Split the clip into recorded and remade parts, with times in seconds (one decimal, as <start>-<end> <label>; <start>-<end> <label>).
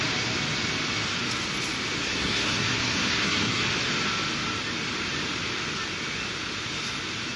0.0-2.0 recorded; 2.0-3.6 remade; 3.6-7.4 recorded